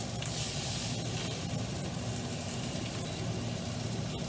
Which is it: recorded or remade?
recorded